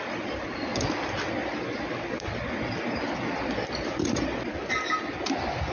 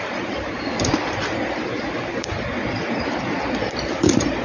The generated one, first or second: second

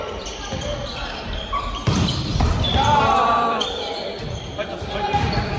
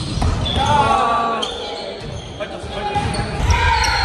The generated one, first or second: first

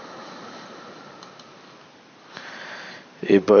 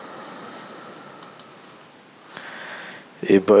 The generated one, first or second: first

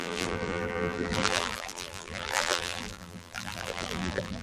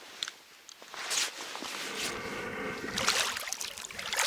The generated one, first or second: first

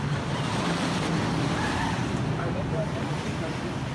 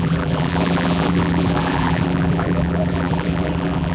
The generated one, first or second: second